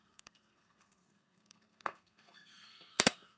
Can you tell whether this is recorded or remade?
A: remade